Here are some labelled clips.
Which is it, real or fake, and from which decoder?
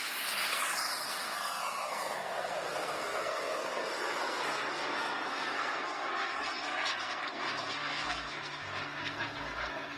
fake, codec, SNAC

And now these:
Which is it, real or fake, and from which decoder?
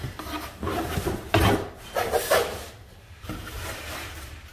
fake, vocoder, BigVGAN v2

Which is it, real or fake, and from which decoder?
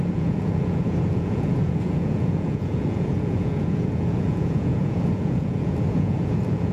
fake, vocoder, Vocos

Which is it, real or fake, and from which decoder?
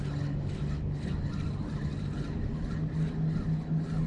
real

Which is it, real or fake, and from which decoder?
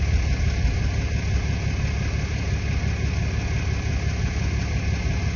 real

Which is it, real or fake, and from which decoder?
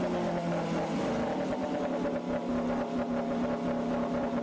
real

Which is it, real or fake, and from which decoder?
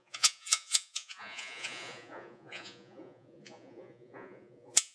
fake, vocoder, Vocos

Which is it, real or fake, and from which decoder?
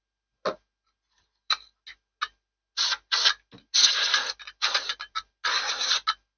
real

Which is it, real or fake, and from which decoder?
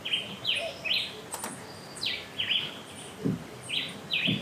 real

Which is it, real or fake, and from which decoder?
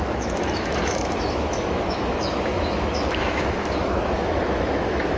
fake, autoencoder, DAC-VAE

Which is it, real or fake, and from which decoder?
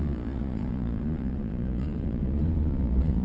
fake, vocoder, Vocos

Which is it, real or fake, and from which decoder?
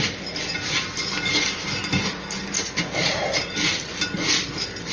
real